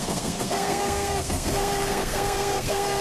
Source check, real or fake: fake